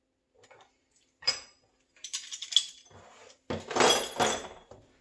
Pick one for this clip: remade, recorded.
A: recorded